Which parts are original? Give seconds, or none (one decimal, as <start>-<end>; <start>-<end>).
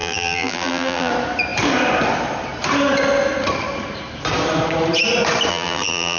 1.1-5.5